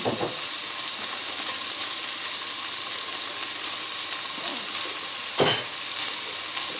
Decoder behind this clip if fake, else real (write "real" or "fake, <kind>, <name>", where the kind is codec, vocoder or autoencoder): real